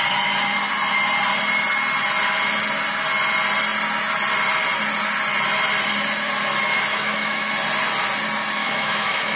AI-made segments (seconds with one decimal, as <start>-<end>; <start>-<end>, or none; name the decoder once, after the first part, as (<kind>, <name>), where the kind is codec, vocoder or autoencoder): 6.9-7.5 (autoencoder, DAC-VAE); 8.6-9.4